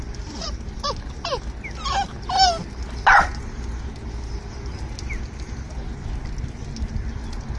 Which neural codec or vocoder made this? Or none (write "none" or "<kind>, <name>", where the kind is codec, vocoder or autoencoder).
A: none